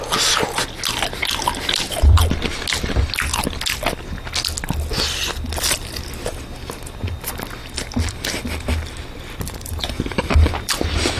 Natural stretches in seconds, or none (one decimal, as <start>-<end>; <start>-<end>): 0.0-7.6